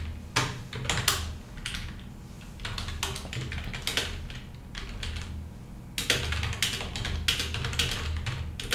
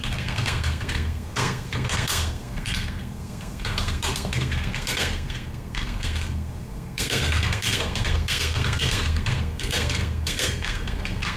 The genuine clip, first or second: first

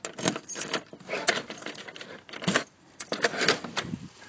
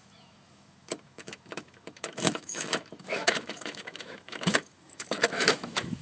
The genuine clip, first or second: first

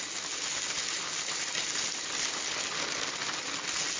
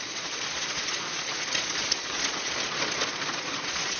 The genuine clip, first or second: first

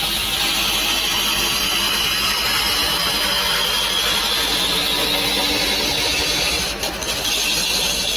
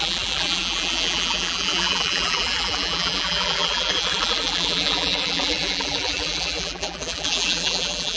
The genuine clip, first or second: first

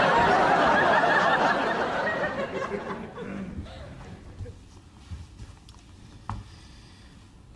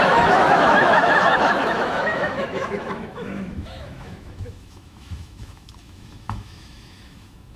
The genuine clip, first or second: first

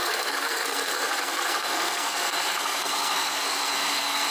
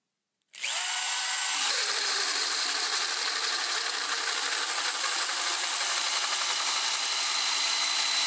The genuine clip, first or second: second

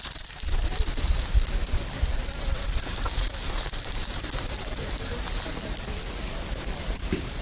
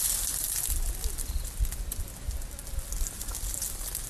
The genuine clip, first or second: second